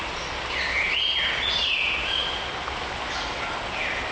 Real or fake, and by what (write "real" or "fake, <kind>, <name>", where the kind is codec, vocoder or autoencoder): real